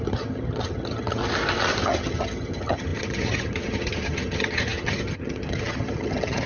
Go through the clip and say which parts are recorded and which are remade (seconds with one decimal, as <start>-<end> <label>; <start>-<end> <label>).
0.0-1.2 remade; 1.2-1.8 recorded; 1.8-6.5 remade